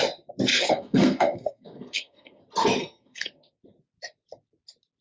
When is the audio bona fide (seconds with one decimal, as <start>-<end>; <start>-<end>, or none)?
0.0-0.5; 2.4-2.8; 3.6-5.0